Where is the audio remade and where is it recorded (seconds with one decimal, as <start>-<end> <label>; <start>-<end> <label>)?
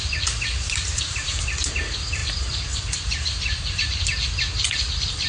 0.0-5.3 remade